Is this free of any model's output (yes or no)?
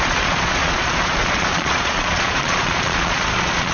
no